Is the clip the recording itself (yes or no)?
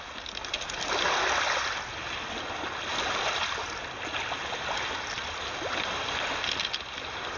yes